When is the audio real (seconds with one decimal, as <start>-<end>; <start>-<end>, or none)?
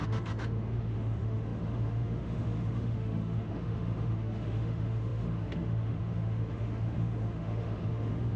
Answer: none